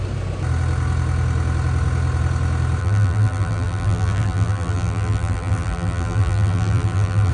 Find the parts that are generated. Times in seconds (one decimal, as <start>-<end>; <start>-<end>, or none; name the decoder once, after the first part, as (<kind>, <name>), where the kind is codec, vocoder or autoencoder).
2.8-7.3 (vocoder, BigVGAN v2)